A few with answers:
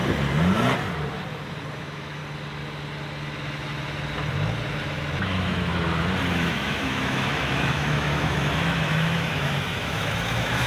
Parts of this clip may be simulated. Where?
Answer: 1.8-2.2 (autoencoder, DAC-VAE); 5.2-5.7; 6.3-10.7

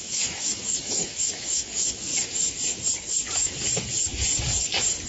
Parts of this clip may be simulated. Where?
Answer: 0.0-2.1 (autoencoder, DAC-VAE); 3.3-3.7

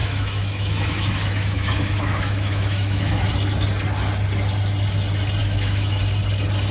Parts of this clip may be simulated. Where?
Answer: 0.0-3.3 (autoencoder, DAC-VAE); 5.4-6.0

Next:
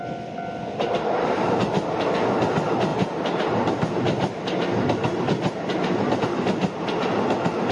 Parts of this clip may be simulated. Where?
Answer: none

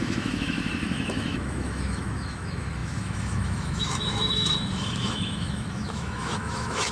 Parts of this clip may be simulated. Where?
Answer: 0.0-6.9 (autoencoder, DAC-VAE)